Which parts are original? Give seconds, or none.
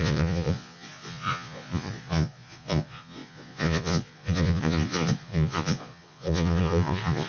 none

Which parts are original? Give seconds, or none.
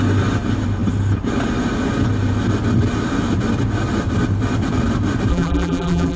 0.0-5.3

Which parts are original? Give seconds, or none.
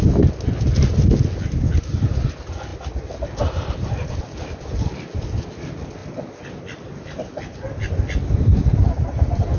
0.0-9.6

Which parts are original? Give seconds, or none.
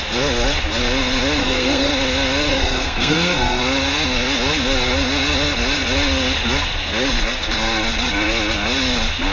0.0-1.4; 1.9-2.5; 3.6-9.3